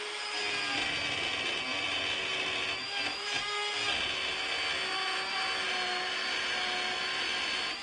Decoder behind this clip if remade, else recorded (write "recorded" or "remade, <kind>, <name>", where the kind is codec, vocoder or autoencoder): recorded